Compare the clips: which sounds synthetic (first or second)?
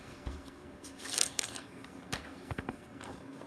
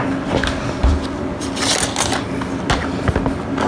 first